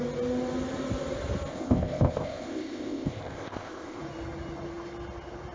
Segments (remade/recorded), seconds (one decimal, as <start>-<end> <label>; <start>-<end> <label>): 0.0-1.5 recorded; 1.5-4.0 remade; 4.0-5.5 recorded

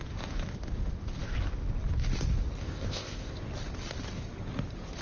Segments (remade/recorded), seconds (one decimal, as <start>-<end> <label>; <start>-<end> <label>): 0.0-2.6 recorded; 2.6-3.3 remade; 3.3-5.0 recorded

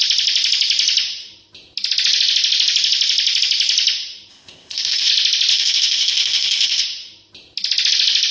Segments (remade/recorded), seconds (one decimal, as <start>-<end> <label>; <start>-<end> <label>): 0.0-4.3 recorded; 4.3-5.1 remade; 5.1-5.5 recorded; 5.5-6.8 remade; 6.8-8.3 recorded

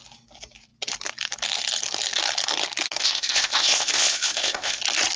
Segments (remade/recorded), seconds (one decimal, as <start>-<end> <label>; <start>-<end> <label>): 0.0-3.0 recorded; 3.0-4.8 remade; 4.8-5.2 recorded

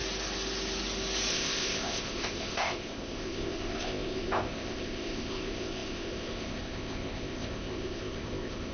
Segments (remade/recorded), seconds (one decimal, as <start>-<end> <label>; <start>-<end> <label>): 0.0-1.3 recorded; 1.3-8.7 remade